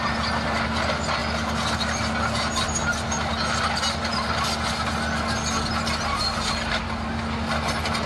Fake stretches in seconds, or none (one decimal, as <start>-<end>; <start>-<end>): none